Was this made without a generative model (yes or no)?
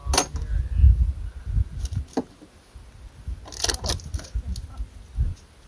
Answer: yes